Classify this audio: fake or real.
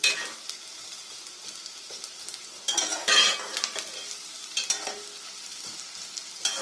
real